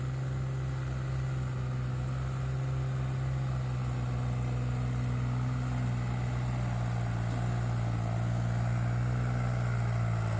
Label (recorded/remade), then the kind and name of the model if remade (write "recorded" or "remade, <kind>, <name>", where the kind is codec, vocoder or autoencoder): recorded